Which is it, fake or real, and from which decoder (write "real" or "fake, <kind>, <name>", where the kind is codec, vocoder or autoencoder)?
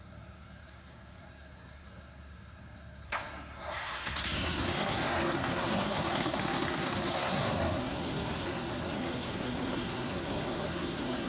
fake, codec, SNAC